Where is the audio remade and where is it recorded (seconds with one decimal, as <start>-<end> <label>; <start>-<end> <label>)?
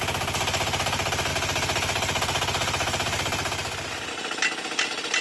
0.0-5.2 recorded